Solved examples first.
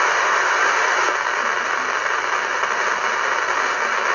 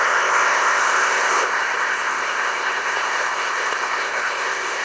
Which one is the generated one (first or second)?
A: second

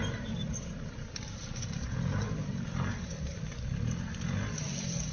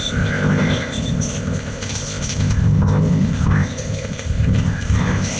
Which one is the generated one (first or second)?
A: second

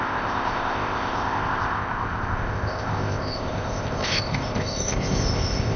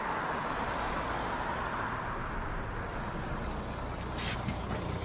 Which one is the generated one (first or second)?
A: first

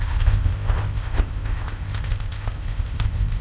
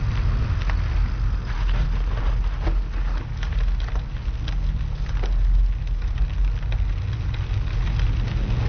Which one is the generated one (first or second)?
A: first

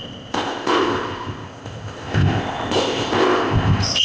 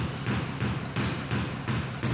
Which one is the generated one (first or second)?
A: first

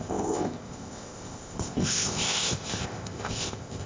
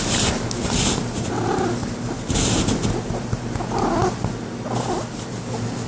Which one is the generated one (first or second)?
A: first